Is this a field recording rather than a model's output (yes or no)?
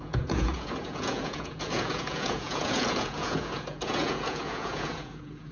no